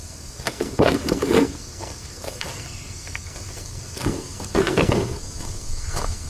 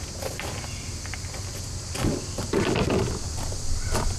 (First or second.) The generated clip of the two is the first